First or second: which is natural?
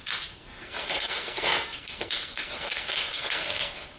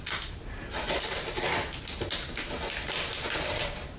second